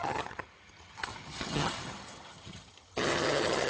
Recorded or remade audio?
remade